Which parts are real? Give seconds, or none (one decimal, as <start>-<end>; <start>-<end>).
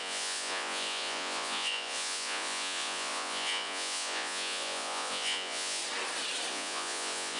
5.8-6.5